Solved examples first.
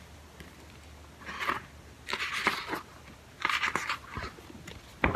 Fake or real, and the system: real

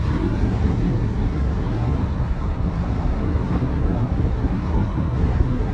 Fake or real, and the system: fake, codec, SNAC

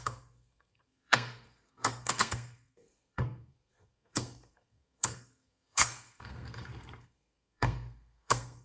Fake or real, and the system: fake, codec, SNAC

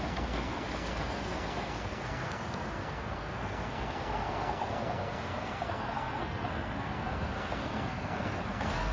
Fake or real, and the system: fake, codec, SNAC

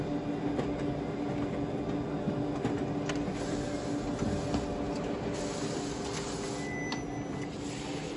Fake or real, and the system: real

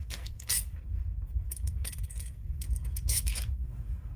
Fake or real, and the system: fake, codec, SNAC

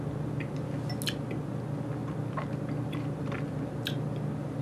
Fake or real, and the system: real